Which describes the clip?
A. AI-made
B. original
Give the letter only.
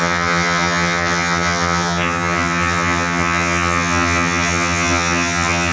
A